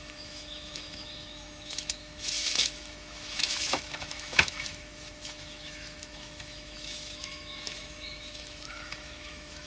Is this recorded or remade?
remade